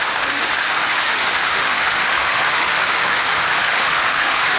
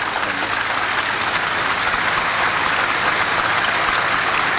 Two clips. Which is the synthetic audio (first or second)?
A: first